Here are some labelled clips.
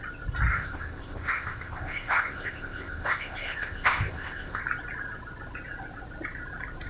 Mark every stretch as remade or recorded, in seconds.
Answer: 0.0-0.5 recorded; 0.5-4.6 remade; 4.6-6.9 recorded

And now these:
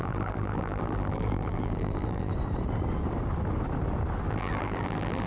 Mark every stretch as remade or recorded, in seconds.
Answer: 0.0-2.3 remade; 2.3-4.3 recorded; 4.3-5.3 remade

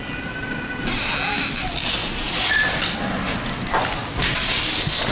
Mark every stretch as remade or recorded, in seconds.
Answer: 0.0-2.0 recorded; 2.0-2.5 remade; 2.5-5.1 recorded

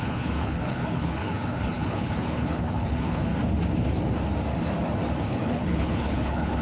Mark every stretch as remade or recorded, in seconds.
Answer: 0.0-3.3 remade; 3.3-5.2 recorded; 5.2-6.6 remade

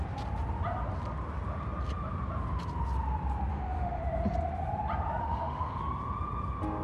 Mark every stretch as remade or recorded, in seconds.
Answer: 0.0-3.5 recorded; 3.5-4.0 remade; 4.0-5.2 recorded; 5.2-5.8 remade; 5.8-6.8 recorded

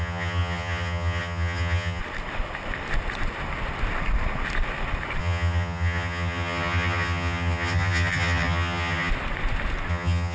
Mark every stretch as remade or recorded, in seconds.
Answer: 0.0-2.0 remade; 2.0-5.2 recorded; 5.2-9.1 remade; 9.1-9.9 recorded; 9.9-10.3 remade